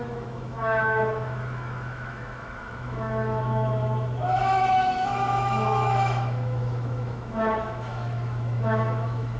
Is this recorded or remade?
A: remade